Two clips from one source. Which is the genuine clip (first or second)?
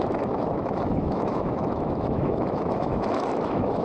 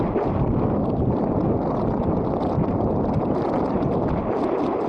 second